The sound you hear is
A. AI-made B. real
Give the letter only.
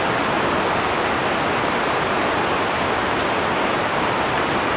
B